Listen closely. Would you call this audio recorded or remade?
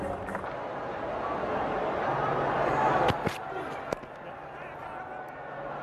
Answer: recorded